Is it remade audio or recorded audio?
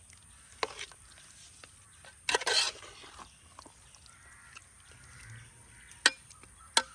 recorded